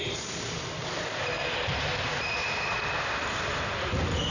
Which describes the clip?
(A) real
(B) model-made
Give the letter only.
A